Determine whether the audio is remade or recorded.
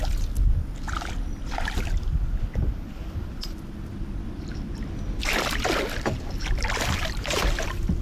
recorded